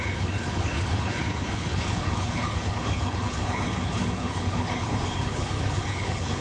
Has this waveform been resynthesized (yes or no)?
yes